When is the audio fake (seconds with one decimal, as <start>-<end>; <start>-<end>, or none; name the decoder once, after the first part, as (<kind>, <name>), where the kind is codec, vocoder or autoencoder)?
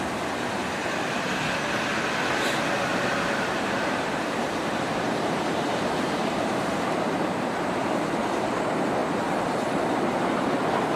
2.9-7.8 (vocoder, BigVGAN v2)